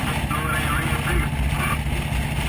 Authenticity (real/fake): real